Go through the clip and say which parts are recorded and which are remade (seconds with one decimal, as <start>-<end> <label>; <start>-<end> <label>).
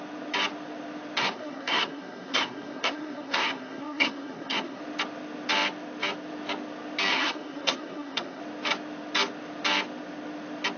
0.0-1.2 recorded; 1.2-4.8 remade; 4.8-7.1 recorded; 7.1-8.4 remade; 8.4-10.8 recorded